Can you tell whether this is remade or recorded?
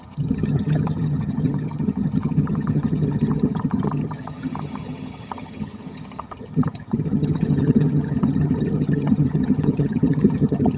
remade